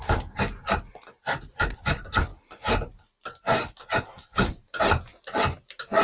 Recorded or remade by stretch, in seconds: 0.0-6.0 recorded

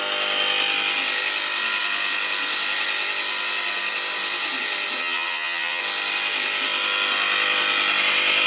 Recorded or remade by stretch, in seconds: 0.0-5.0 recorded; 5.0-5.8 remade; 5.8-8.5 recorded

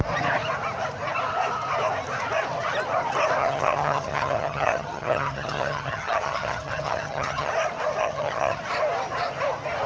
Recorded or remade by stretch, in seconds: 0.0-3.4 recorded; 3.4-7.5 remade; 7.5-8.0 recorded; 8.0-8.6 remade; 8.6-9.9 recorded

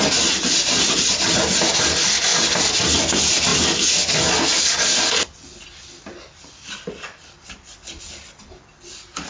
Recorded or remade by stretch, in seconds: 0.0-9.3 recorded

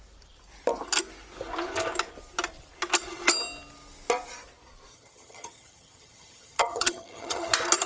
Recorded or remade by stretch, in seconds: 0.0-4.9 recorded; 4.9-7.5 remade; 7.5-7.9 recorded

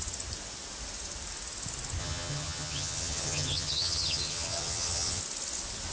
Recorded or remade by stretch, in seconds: 0.0-2.0 recorded; 2.0-5.2 remade; 5.2-5.9 recorded